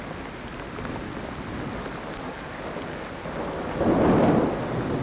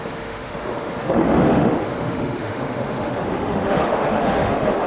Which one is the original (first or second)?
first